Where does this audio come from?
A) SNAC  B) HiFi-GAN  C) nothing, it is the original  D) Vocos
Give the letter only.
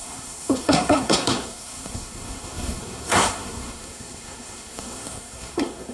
A